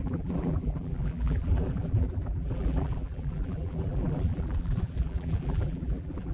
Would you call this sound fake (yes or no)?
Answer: yes